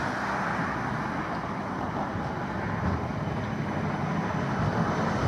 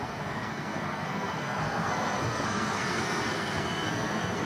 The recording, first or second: first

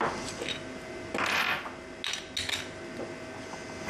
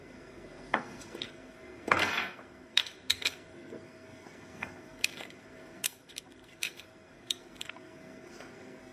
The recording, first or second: first